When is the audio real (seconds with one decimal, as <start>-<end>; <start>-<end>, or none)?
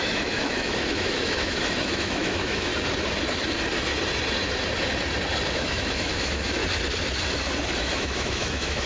2.7-5.5; 6.6-7.8